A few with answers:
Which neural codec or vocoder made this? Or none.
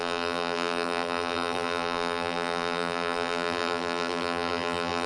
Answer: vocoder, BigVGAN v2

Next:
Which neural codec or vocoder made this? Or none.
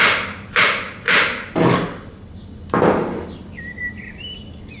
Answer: none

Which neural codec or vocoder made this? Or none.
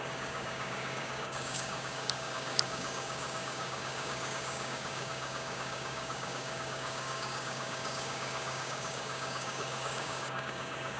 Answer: codec, DAC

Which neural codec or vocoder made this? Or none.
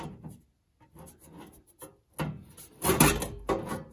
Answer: none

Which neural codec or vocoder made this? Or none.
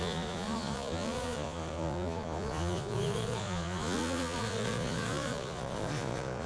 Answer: vocoder, Vocos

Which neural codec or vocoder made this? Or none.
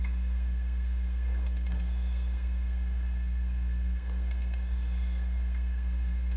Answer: codec, SNAC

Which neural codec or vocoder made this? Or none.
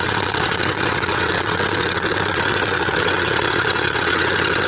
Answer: vocoder, WaveNeXt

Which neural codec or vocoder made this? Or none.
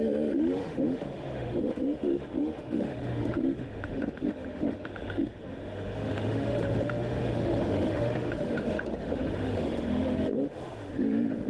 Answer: autoencoder, DAC-VAE